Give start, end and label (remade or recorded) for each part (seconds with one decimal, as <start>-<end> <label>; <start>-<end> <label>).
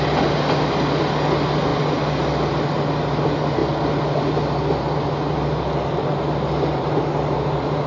0.0-7.9 recorded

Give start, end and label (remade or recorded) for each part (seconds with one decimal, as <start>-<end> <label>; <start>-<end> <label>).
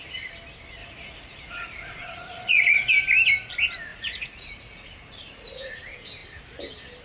0.0-0.8 recorded; 0.8-2.9 remade; 2.9-3.9 recorded; 3.9-5.8 remade; 5.8-7.0 recorded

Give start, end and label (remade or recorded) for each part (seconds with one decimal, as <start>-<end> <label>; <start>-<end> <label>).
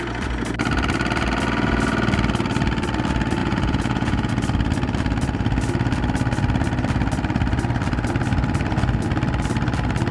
0.0-3.4 recorded; 3.4-4.3 remade; 4.3-10.1 recorded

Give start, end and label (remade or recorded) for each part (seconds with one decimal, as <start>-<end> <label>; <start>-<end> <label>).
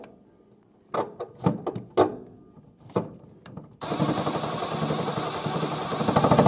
0.0-6.5 recorded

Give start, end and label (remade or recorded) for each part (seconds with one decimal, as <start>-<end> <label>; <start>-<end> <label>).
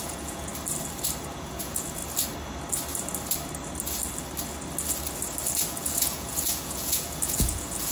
0.0-0.5 remade; 0.5-1.3 recorded; 1.3-2.0 remade; 2.0-5.7 recorded; 5.7-7.9 remade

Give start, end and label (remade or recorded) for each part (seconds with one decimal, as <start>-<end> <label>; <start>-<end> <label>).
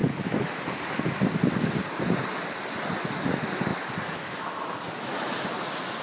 0.0-6.0 recorded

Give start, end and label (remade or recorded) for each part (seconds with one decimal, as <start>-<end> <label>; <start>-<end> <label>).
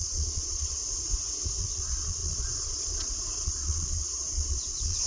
0.0-0.8 remade; 0.8-1.6 recorded; 1.6-5.1 remade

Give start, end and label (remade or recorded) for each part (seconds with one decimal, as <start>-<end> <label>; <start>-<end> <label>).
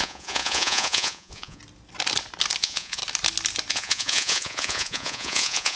0.0-1.6 remade; 1.6-2.6 recorded; 2.6-3.0 remade; 3.0-3.7 recorded; 3.7-5.8 remade